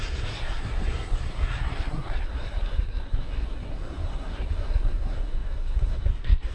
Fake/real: fake